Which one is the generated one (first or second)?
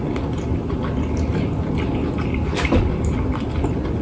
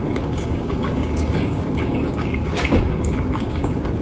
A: second